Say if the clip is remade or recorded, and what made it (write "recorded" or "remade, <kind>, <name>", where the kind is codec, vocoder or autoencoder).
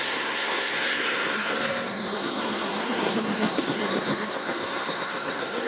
remade, codec, SNAC